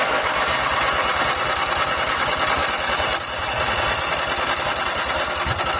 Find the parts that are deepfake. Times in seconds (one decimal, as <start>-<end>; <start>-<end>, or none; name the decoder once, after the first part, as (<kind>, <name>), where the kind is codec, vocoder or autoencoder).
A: none